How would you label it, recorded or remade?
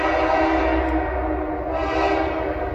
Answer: recorded